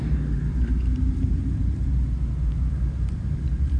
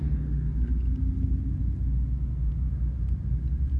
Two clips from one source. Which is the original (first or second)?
second